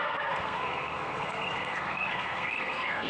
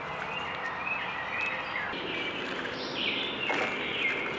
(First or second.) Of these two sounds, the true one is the second